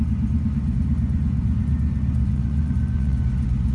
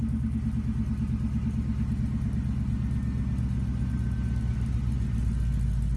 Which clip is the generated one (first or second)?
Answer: first